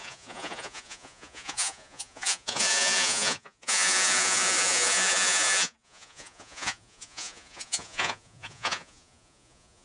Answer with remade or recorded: remade